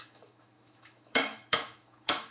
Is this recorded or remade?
remade